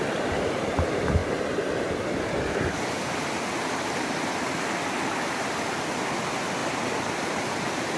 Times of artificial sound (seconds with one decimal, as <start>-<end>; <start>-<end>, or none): 6.6-7.4